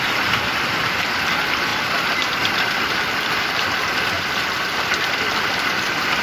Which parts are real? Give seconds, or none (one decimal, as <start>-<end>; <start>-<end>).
none